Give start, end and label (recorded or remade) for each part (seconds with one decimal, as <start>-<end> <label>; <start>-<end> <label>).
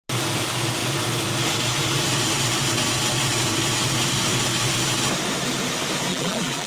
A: 0.0-6.1 recorded; 6.1-6.7 remade